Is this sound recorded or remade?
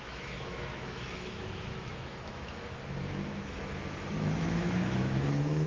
remade